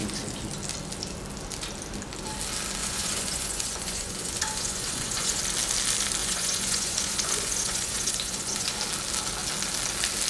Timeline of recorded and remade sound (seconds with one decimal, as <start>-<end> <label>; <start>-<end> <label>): 0.0-2.8 recorded; 2.8-5.4 remade; 5.4-6.2 recorded; 6.2-8.8 remade; 8.8-10.3 recorded